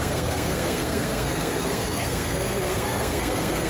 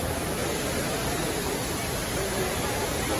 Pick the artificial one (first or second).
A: first